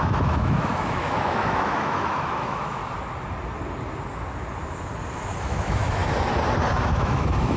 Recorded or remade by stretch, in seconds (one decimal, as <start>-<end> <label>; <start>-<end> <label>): 0.0-2.8 remade; 2.8-5.4 recorded; 5.4-6.0 remade; 6.0-6.8 recorded; 6.8-7.6 remade